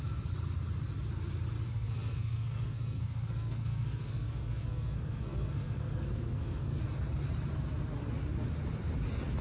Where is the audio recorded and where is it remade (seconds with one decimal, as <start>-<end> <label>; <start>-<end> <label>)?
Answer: 0.0-1.7 recorded; 1.7-6.8 remade; 6.8-9.4 recorded